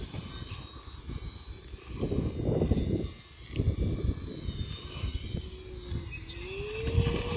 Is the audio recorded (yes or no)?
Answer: yes